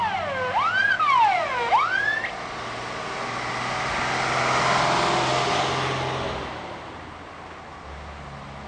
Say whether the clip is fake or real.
real